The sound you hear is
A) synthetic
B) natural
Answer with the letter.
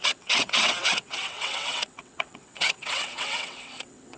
A